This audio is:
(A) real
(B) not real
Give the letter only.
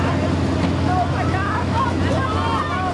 A